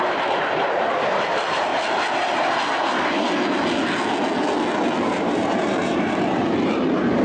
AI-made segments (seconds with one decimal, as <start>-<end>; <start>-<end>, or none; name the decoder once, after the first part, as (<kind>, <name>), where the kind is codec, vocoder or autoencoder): 0.0-1.7 (vocoder, BigVGAN v2); 5.1-7.2